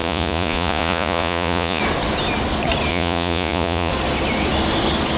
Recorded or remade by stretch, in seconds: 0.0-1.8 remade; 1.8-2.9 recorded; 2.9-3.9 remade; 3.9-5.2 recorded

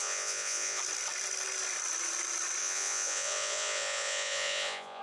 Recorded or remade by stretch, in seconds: 0.0-0.8 remade; 0.8-2.6 recorded; 2.6-5.0 remade

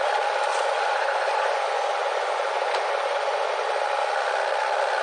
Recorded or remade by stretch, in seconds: 0.0-0.5 recorded; 0.5-3.5 remade; 3.5-5.0 recorded

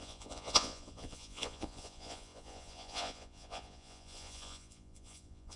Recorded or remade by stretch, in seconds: 0.0-5.6 remade

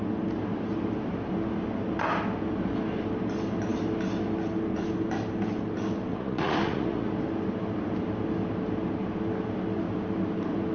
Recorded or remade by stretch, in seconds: 0.0-6.1 recorded; 6.1-7.1 remade; 7.1-10.7 recorded

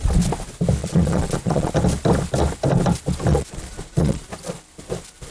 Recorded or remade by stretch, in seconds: 0.0-0.8 recorded; 0.8-1.7 remade; 1.7-3.3 recorded; 3.3-4.2 remade; 4.2-5.3 recorded